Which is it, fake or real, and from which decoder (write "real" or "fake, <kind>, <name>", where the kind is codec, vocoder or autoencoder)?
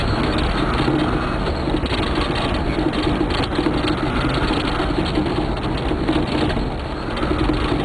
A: real